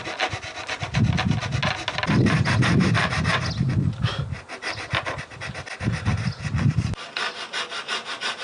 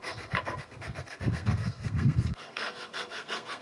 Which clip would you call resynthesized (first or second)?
second